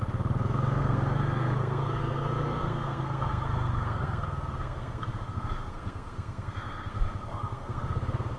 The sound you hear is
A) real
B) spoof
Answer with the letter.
B